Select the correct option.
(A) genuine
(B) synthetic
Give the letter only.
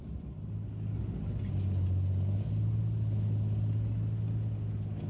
A